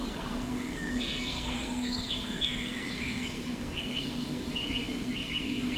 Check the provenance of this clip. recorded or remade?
remade